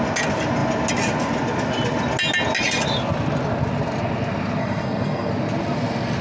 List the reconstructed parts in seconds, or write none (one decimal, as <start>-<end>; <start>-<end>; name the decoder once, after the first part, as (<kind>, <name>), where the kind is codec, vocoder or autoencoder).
4.6-5.3 (codec, SNAC)